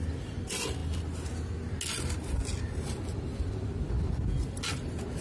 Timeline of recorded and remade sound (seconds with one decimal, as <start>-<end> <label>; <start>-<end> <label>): 0.0-5.2 recorded